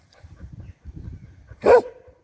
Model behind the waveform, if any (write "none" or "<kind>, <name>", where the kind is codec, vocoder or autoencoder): vocoder, BigVGAN v2